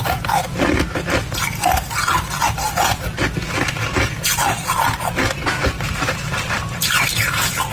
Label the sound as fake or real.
fake